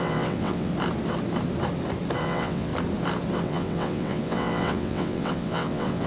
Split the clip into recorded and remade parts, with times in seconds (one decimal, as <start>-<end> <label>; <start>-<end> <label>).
0.0-0.7 remade; 0.7-2.2 recorded; 2.2-2.7 remade; 2.7-3.4 recorded; 3.4-6.1 remade